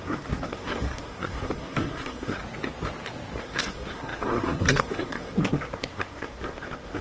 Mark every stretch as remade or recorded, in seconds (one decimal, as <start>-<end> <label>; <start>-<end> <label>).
0.0-2.4 remade; 2.4-3.4 recorded; 3.4-7.0 remade